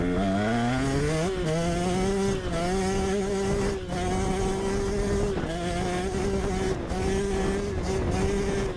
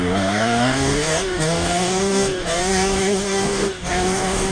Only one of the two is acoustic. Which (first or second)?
first